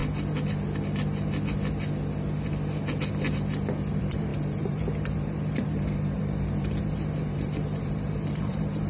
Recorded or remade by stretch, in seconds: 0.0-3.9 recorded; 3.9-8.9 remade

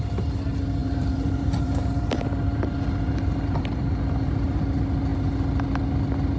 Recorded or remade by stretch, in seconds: 0.0-0.8 recorded; 0.8-4.6 remade; 4.6-6.4 recorded

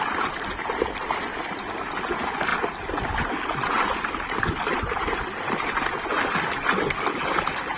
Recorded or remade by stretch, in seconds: 0.0-7.8 recorded

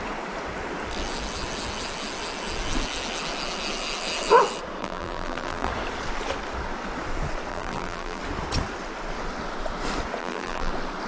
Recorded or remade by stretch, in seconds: 0.0-4.8 recorded; 4.8-5.7 remade; 5.7-7.5 recorded; 7.5-8.2 remade; 8.2-10.2 recorded; 10.2-10.7 remade; 10.7-11.1 recorded

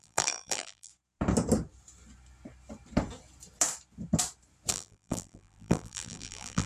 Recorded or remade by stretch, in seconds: 0.0-0.9 remade; 0.9-4.7 recorded; 4.7-6.7 remade

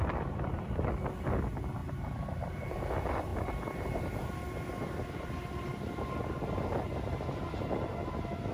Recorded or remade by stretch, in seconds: 0.0-1.8 recorded; 1.8-2.9 remade; 2.9-8.5 recorded

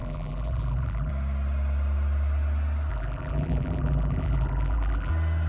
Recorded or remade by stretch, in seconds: 0.0-1.1 remade; 1.1-2.9 recorded; 2.9-5.1 remade; 5.1-5.5 recorded